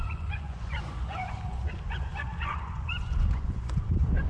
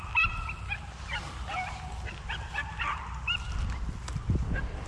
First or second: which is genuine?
second